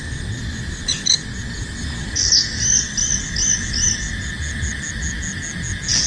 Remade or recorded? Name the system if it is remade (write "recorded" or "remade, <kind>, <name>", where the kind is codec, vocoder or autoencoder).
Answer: recorded